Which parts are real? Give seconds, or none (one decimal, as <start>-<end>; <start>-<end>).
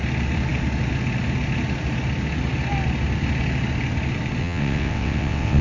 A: 0.0-4.4